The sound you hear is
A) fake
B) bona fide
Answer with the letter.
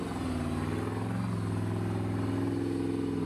B